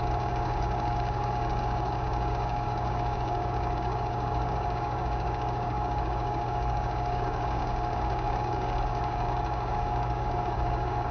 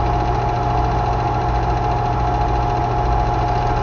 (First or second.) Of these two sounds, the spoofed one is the first